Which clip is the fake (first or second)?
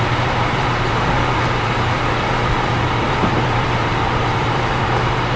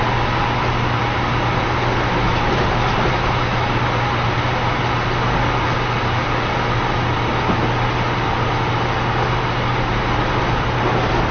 first